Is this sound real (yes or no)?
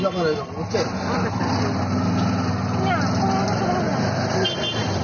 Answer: yes